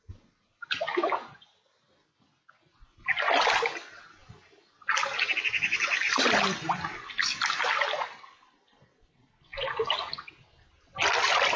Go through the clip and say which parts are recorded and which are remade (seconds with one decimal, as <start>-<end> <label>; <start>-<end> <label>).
0.0-11.6 recorded